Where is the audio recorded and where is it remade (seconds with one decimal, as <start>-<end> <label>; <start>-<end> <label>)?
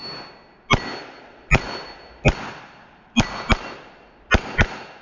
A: 0.0-5.0 recorded